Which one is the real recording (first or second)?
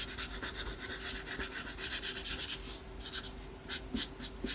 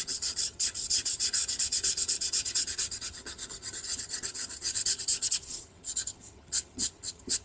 first